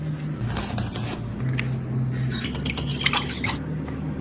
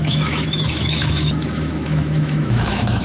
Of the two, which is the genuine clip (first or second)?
first